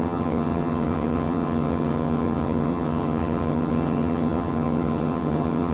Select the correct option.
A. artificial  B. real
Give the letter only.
A